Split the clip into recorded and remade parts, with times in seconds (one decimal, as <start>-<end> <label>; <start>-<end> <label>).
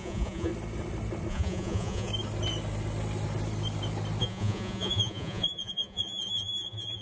0.0-0.5 remade; 0.5-1.3 recorded; 1.3-2.1 remade; 2.1-4.2 recorded; 4.2-7.0 remade